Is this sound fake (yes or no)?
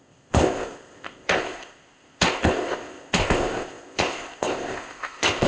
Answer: yes